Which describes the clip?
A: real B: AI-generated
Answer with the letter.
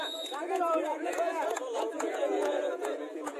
B